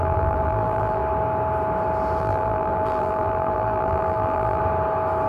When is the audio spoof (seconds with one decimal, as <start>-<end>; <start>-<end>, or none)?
0.0-1.0; 2.2-4.6